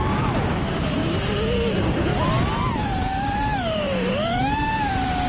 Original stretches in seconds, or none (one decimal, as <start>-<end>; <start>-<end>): 2.1-2.8